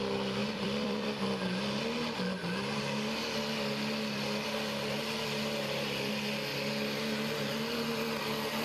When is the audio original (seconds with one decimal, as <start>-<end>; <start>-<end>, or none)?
0.0-0.4; 1.2-8.6